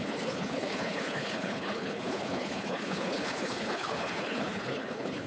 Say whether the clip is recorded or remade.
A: remade